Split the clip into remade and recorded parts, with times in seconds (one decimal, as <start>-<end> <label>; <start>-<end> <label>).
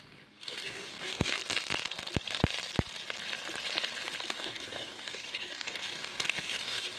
0.0-1.4 remade; 1.4-4.3 recorded; 4.3-7.0 remade